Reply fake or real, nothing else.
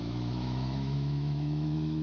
fake